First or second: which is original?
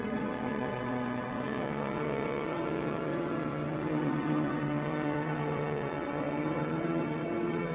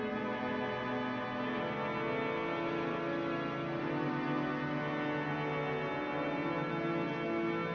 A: second